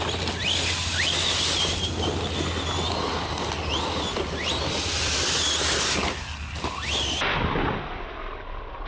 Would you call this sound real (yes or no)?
yes